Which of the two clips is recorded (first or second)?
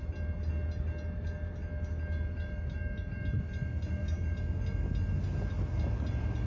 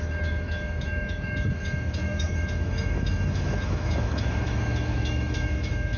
first